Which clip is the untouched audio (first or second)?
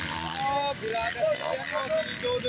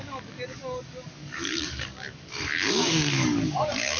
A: first